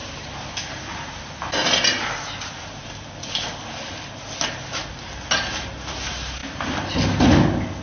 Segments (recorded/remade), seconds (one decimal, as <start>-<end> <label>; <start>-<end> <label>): 0.0-7.8 recorded

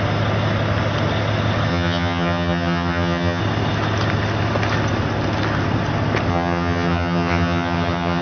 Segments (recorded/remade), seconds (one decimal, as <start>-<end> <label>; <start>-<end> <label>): 0.0-1.7 recorded; 1.7-3.4 remade; 3.4-6.3 recorded; 6.3-8.2 remade

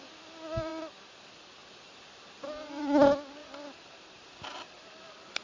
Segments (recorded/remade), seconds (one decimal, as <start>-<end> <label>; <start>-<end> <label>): 0.0-5.4 recorded

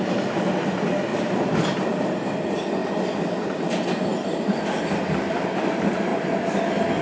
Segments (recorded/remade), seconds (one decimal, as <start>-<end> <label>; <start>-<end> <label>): 0.0-7.0 recorded